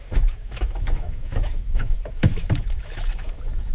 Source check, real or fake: fake